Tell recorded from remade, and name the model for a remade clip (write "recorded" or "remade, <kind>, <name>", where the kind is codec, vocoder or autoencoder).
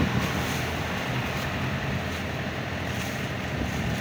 recorded